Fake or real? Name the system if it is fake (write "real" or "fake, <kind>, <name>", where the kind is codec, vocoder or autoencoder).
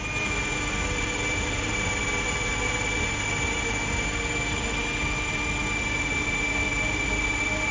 real